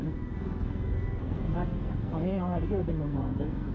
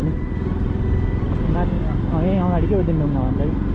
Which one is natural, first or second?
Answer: second